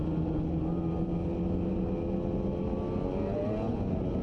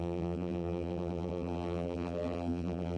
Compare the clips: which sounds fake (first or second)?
second